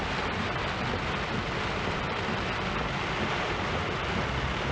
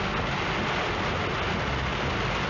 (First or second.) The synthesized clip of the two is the first